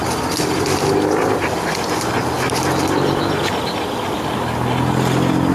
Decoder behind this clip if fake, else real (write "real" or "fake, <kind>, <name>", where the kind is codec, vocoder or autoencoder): real